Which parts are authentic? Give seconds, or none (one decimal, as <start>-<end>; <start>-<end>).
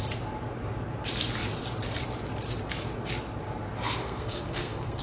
0.0-4.0